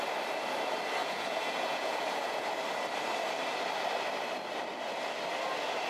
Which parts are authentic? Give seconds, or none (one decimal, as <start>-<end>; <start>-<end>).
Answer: 0.0-1.0; 2.5-5.9